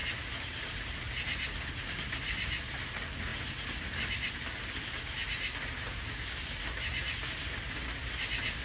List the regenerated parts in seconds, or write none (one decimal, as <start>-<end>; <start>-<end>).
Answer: none